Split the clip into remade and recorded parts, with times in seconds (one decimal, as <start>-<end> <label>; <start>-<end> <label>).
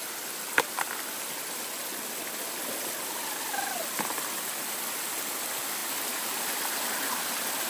0.0-7.7 recorded